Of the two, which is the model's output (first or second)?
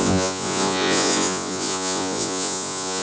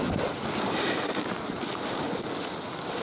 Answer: first